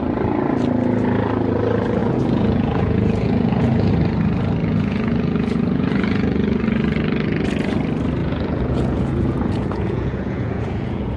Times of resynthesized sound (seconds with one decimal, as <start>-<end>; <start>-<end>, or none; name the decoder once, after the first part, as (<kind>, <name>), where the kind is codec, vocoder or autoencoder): 2.0-3.9 (vocoder, Vocos); 4.6-6.6; 8.2-11.2